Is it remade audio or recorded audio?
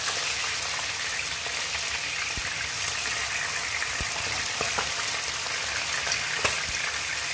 recorded